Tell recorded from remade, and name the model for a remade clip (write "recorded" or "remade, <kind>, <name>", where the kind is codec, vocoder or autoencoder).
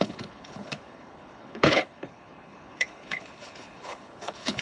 remade, codec, HILCodec